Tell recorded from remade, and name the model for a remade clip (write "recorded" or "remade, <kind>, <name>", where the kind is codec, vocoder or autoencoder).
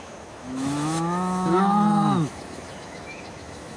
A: remade, autoencoder, DAC-VAE